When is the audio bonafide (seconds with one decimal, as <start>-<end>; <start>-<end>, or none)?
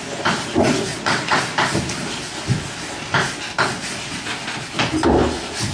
0.0-0.9; 1.4-5.7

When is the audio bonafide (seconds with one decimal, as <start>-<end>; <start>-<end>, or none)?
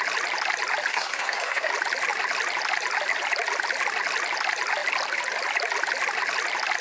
0.0-0.9; 1.7-6.8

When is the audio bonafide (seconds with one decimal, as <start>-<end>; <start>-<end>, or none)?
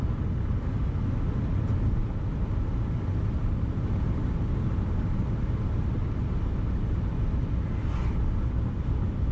0.0-9.3